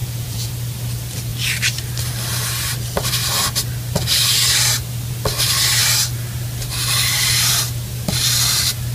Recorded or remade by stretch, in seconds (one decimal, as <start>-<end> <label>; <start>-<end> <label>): 0.0-0.5 remade; 0.5-8.9 recorded